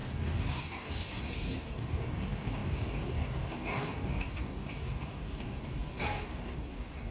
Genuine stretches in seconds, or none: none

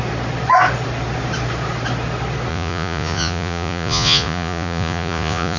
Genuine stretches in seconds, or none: 0.0-2.5

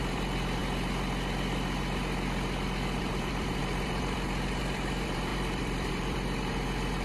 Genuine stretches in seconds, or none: 0.6-3.0